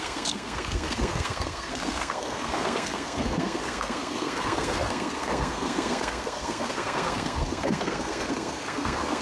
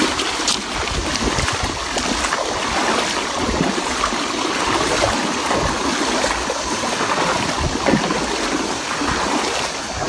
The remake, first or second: first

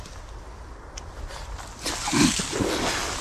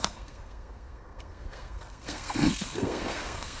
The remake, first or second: second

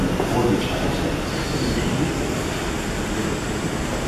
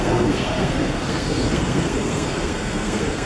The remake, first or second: second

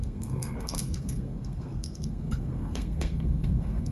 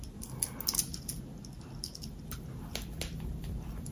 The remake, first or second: first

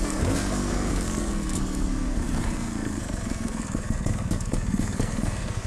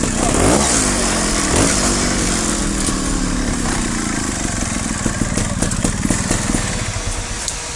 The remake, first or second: first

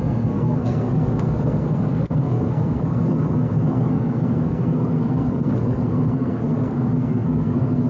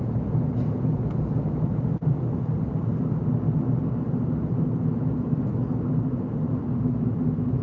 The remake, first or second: first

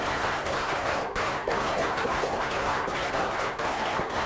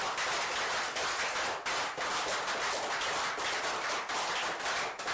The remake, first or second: first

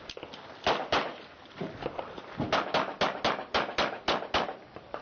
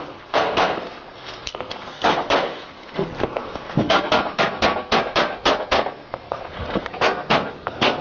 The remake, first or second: second